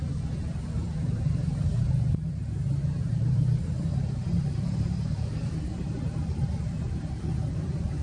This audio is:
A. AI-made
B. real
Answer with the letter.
A